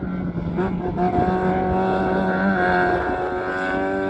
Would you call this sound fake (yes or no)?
no